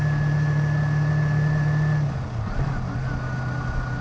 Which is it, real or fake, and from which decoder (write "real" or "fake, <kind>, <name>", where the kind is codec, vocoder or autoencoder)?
real